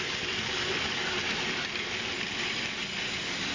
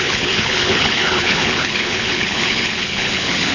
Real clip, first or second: first